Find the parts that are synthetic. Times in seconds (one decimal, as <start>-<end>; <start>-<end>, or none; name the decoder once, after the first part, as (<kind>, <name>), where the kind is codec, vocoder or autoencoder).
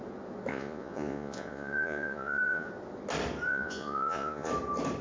0.5-2.7 (vocoder, Vocos); 3.5-4.5